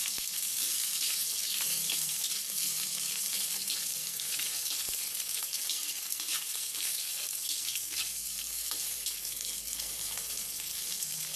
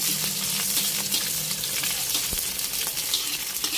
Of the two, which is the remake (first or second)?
first